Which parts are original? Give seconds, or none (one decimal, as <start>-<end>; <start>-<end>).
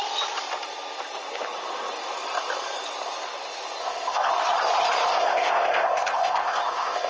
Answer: 0.0-3.8; 4.3-5.1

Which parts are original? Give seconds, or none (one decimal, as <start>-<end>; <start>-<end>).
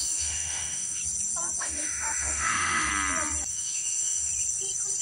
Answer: 1.0-1.6; 2.9-3.5; 4.3-5.0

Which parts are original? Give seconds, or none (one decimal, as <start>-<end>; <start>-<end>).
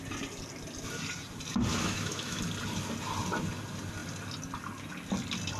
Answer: 0.0-1.7; 2.4-5.6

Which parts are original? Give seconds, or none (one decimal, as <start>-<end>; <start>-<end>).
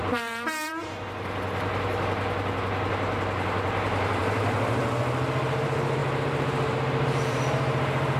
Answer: 0.7-2.9; 4.8-5.4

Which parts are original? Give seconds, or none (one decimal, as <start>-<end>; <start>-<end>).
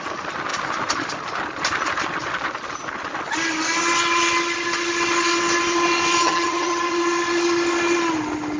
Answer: 0.0-6.2; 6.8-8.6